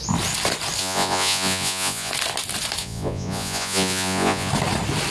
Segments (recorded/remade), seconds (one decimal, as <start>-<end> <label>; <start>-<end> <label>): 0.0-0.8 recorded; 0.8-2.1 remade; 2.1-2.8 recorded; 2.8-4.5 remade; 4.5-5.1 recorded

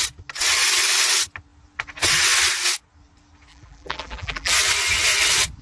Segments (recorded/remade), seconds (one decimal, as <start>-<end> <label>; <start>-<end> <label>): 0.0-3.5 recorded; 3.5-4.5 remade; 4.5-5.6 recorded

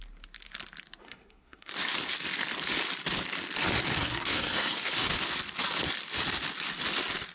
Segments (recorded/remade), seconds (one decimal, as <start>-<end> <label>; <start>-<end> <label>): 0.0-1.0 recorded; 1.0-1.7 remade; 1.7-4.0 recorded; 4.0-4.9 remade; 4.9-7.3 recorded

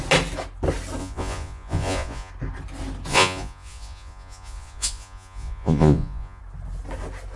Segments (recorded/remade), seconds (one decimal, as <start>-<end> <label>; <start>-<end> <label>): 0.0-1.0 recorded; 1.0-2.3 remade; 2.3-3.1 recorded; 3.1-6.4 remade; 6.4-7.4 recorded

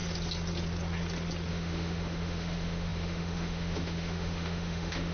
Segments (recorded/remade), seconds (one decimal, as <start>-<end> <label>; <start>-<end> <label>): 0.0-1.5 recorded; 1.5-5.1 remade